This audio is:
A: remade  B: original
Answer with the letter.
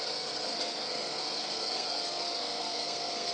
A